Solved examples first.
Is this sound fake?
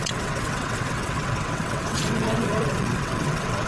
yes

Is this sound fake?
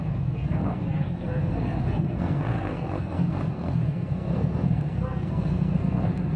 yes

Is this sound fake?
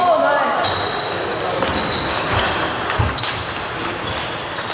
no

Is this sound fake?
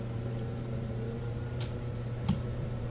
yes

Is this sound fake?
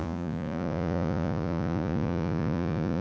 yes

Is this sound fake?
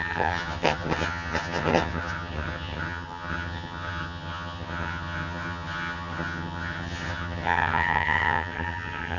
yes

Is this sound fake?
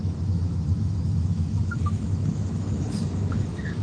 yes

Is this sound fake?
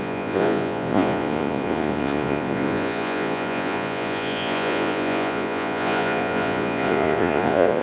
yes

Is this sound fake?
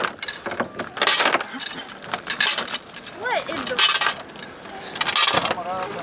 no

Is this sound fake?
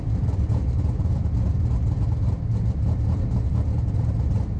yes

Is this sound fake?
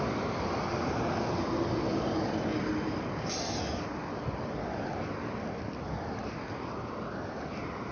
no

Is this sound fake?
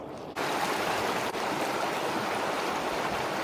no